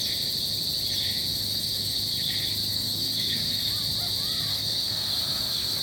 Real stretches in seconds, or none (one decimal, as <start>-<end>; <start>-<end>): 0.0-1.3; 1.9-2.7; 3.7-4.5